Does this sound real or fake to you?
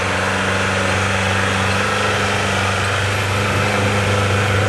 real